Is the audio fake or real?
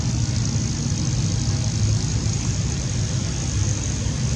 real